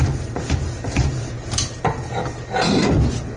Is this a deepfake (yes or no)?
no